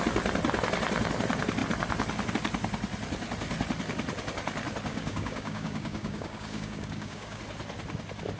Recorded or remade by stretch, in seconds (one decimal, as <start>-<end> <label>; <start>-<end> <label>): 0.0-4.9 recorded; 4.9-7.4 remade; 7.4-8.4 recorded